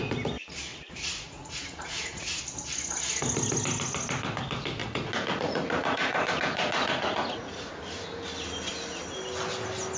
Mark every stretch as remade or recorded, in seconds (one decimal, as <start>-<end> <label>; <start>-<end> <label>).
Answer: 0.0-0.7 recorded; 0.7-2.4 remade; 2.4-4.8 recorded; 4.8-7.8 remade; 7.8-10.0 recorded

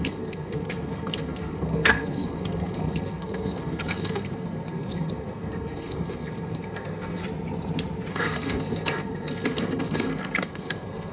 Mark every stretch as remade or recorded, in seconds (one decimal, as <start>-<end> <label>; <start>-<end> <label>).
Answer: 0.0-7.2 remade; 7.2-8.1 recorded; 8.1-11.1 remade

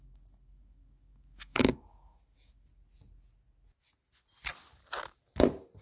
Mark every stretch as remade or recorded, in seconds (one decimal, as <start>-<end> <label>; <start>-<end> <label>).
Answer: 0.0-2.7 remade; 2.7-5.8 recorded

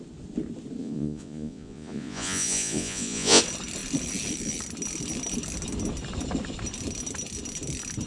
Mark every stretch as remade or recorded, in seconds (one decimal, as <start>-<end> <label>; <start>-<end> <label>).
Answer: 0.0-0.8 recorded; 0.8-3.4 remade; 3.4-8.1 recorded

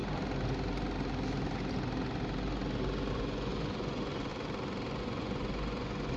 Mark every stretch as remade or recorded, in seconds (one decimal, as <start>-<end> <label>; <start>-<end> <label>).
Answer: 0.0-3.1 recorded; 3.1-4.3 remade; 4.3-5.0 recorded; 5.0-6.2 remade

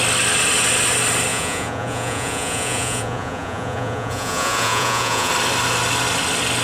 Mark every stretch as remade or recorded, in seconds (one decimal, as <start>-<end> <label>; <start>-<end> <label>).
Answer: 0.0-1.3 recorded; 1.3-5.3 remade; 5.3-6.6 recorded

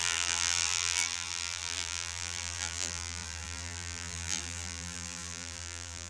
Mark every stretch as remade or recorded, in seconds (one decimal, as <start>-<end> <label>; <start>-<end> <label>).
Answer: 0.0-6.1 remade